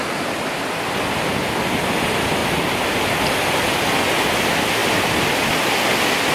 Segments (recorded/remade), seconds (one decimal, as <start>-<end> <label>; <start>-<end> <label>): 0.0-6.3 recorded